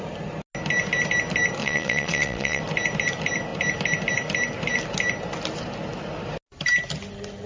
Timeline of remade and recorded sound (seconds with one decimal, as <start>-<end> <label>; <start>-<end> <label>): 0.0-1.6 recorded; 1.6-2.6 remade; 2.6-7.5 recorded